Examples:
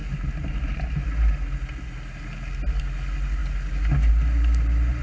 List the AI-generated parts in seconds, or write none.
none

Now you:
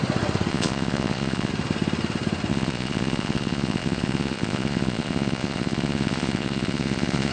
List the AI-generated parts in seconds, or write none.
0.5-1.5 (vocoder, Vocos); 2.5-7.3

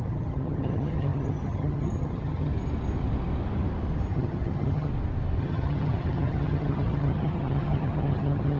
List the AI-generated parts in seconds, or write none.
0.0-2.5 (vocoder, HiFi-GAN); 4.1-4.9; 5.4-8.6

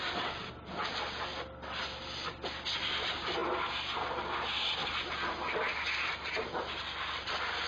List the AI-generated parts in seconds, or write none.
none

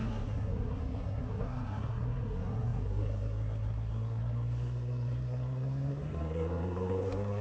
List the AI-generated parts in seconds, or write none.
0.0-7.4 (codec, SNAC)